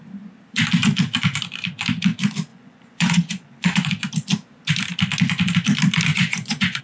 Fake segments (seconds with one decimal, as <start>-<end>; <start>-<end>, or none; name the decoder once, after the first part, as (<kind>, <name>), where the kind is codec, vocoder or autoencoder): 2.5-3.9 (vocoder, Vocos); 6.1-6.8